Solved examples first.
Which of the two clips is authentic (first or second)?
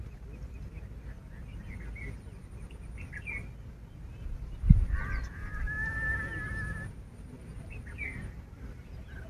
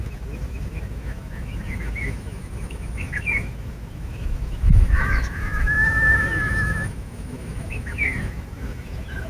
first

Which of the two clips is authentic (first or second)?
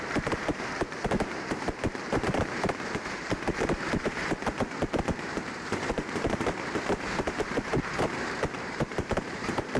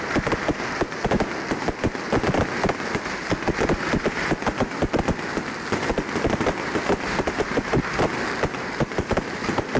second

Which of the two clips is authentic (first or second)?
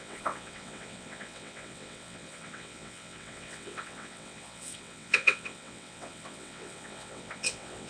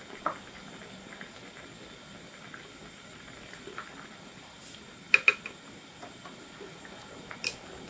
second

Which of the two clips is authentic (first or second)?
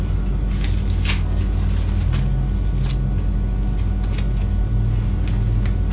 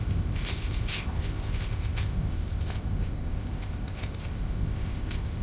first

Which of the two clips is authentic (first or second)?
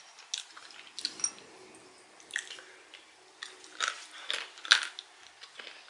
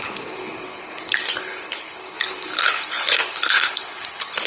first